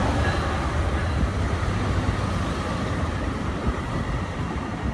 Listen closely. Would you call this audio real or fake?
real